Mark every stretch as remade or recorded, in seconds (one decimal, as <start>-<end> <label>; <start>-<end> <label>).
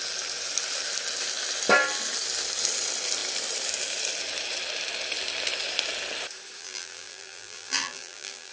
0.0-6.6 recorded; 6.6-8.5 remade